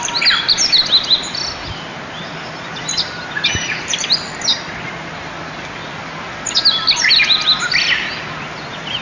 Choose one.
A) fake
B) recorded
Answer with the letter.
B